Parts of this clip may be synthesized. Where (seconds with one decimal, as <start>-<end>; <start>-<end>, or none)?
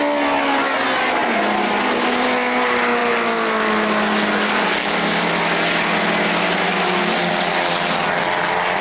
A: none